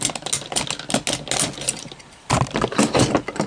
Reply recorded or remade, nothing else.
recorded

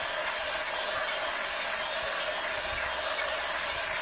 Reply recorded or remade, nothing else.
recorded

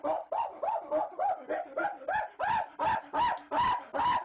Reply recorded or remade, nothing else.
recorded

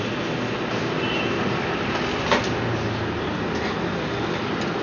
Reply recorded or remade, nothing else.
recorded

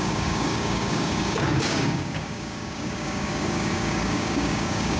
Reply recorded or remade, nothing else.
remade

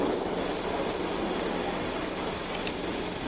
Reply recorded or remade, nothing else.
recorded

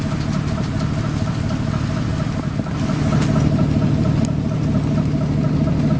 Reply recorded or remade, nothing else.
recorded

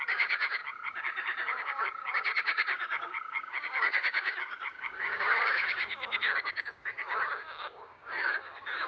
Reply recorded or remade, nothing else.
remade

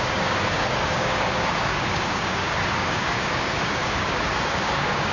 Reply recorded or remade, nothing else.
remade